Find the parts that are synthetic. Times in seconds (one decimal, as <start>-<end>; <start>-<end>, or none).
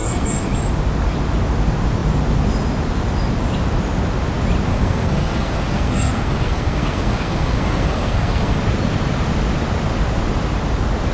0.0-0.5; 4.7-8.6